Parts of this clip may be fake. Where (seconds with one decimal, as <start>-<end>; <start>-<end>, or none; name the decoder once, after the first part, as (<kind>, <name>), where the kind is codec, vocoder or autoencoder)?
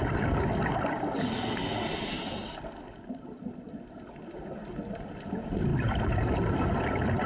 none